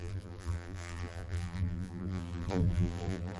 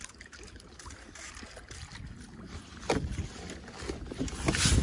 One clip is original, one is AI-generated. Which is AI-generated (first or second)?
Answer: first